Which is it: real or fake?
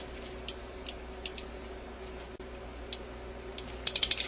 real